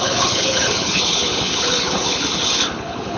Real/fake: fake